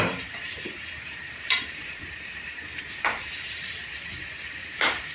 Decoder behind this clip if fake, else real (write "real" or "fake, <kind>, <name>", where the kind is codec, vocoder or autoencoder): fake, vocoder, BigVGAN v2